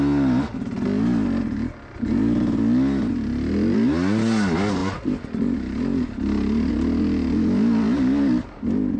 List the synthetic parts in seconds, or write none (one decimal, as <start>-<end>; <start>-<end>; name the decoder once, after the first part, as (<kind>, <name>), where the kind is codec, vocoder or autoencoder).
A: none